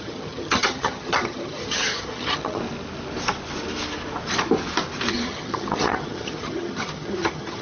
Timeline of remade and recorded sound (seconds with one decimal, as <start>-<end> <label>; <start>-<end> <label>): 0.0-2.6 remade; 2.6-5.1 recorded; 5.1-7.6 remade